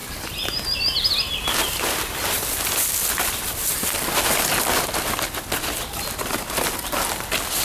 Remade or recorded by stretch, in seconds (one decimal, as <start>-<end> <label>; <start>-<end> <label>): 0.0-7.6 recorded

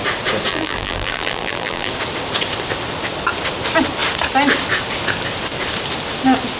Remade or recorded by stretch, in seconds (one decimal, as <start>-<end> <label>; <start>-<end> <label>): 0.0-0.5 recorded; 0.5-1.9 remade; 1.9-6.6 recorded

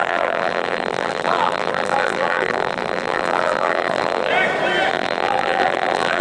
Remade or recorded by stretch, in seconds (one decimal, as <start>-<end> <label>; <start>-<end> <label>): 0.0-4.3 remade; 4.3-4.9 recorded; 4.9-6.2 remade

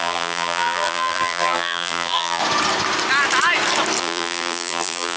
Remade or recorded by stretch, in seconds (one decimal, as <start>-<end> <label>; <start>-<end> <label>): 0.0-2.4 remade; 2.4-4.0 recorded; 4.0-5.2 remade

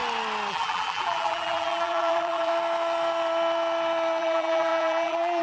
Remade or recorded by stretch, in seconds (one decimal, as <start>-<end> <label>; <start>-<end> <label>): 0.0-0.5 recorded; 0.5-2.5 remade; 2.5-4.2 recorded; 4.2-5.4 remade